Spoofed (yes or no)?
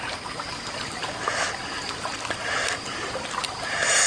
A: no